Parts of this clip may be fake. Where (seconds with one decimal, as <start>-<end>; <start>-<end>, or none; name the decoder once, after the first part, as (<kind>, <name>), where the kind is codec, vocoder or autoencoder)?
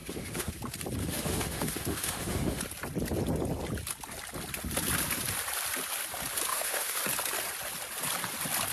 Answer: 0.0-0.6 (autoencoder, DAC-VAE); 1.0-2.6; 6.5-7.0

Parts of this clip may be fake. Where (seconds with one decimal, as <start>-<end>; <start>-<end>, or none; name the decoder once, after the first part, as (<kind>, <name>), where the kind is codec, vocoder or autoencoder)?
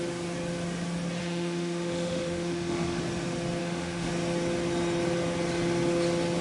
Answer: 1.2-3.0 (autoencoder, DAC-VAE); 3.6-4.1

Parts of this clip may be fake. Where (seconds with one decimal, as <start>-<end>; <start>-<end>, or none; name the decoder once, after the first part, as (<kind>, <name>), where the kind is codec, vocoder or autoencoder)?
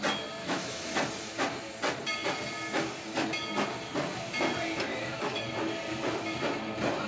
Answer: 0.4-0.9 (autoencoder, DAC-VAE); 4.9-5.4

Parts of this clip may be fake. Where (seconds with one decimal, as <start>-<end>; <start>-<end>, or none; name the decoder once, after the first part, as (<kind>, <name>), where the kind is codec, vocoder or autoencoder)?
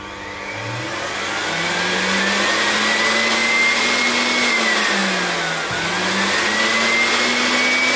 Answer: none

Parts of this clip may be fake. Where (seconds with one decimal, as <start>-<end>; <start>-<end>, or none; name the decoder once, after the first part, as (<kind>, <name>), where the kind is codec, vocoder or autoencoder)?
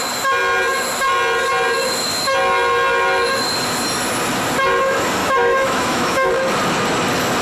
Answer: 5.2-6.3 (autoencoder, DAC-VAE)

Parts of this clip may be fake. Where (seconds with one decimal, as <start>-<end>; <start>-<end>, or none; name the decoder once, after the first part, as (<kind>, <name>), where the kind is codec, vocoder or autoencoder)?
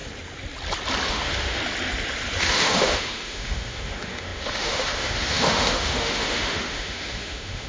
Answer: 1.1-1.6 (autoencoder, DAC-VAE); 2.4-7.7